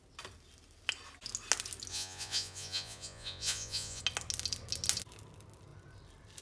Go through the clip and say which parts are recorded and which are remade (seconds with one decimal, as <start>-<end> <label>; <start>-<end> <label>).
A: 0.0-1.9 recorded; 1.9-4.0 remade; 4.0-6.4 recorded